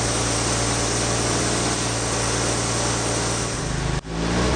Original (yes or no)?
yes